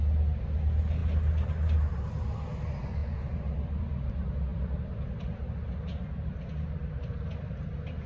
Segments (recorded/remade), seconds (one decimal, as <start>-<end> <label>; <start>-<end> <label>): 0.0-4.5 recorded; 4.5-5.3 remade; 5.3-8.1 recorded